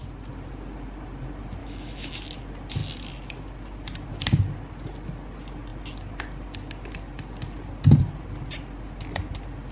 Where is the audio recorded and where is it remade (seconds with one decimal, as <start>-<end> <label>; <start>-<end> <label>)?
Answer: 0.0-1.6 recorded; 1.6-2.1 remade; 2.1-9.7 recorded